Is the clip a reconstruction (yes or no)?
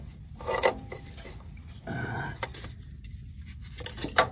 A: no